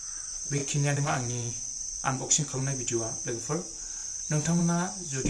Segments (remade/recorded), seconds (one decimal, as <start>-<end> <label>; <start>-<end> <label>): 0.0-0.6 recorded; 0.6-2.6 remade; 2.6-5.3 recorded